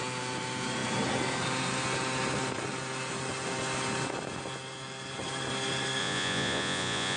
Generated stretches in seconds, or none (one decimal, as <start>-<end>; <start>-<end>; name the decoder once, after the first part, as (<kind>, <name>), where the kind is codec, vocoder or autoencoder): 6.0-7.2 (vocoder, Vocos)